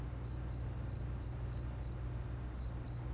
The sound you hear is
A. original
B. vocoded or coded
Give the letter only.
A